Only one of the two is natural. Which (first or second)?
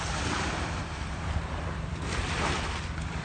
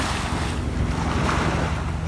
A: second